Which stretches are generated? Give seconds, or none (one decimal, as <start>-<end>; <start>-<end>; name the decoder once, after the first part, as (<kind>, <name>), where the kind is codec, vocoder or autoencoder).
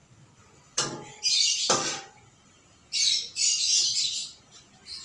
0.0-1.2 (vocoder, Vocos)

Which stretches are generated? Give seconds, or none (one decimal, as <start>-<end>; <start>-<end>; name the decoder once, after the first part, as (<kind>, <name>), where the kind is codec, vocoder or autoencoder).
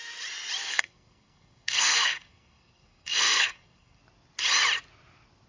0.7-4.0 (codec, SNAC)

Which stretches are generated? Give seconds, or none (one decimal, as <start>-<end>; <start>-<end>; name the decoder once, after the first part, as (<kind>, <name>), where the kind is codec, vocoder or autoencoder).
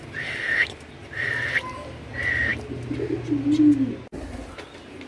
none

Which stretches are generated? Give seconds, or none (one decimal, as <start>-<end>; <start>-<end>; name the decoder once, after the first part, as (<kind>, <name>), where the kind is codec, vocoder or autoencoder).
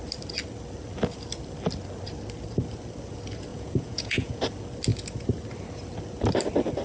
3.5-4.4 (vocoder, Vocos)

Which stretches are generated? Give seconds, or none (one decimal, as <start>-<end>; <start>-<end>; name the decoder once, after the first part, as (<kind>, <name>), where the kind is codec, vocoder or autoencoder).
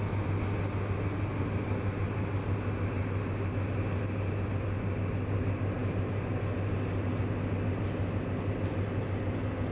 none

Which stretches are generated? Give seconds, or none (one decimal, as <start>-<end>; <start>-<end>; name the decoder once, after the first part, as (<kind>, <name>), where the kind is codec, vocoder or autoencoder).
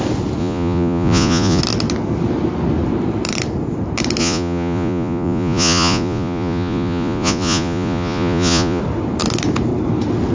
0.4-1.6 (vocoder, Vocos); 4.2-8.8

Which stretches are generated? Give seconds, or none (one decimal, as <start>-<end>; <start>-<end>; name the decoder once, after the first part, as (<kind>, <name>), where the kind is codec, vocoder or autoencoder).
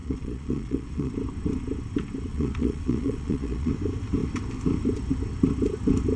0.0-1.1 (vocoder, Vocos); 2.3-3.7